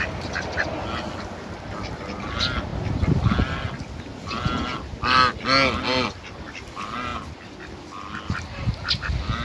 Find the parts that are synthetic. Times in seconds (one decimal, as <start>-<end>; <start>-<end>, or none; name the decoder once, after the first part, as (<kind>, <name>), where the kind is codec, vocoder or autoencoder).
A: none